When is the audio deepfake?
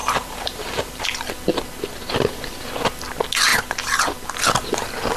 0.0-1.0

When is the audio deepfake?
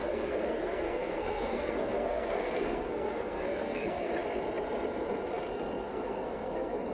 0.0-4.1; 5.9-6.9